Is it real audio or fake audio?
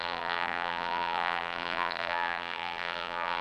fake